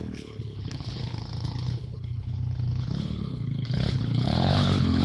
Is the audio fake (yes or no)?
yes